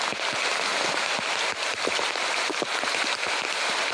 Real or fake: real